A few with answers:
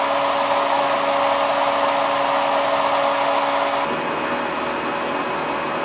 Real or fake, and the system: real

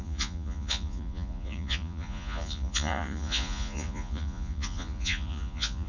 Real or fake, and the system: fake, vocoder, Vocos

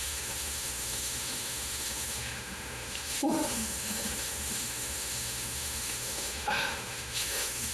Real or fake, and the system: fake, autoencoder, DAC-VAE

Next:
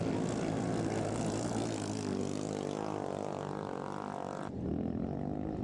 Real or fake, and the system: real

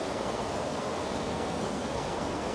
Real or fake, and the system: fake, codec, SNAC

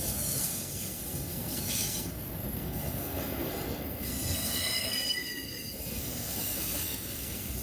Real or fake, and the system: fake, codec, SNAC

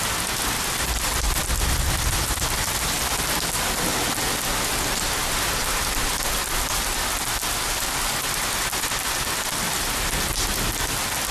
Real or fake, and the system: real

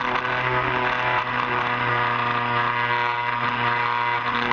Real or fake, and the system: real